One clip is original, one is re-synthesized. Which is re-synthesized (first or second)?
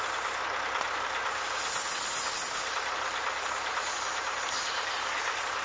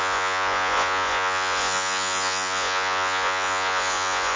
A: second